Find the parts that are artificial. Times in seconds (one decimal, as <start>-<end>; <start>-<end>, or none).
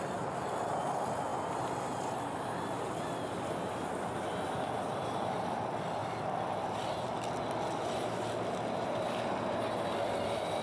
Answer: none